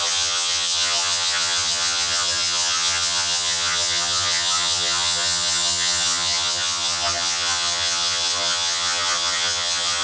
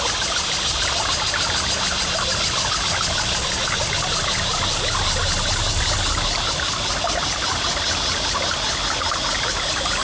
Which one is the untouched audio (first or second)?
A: second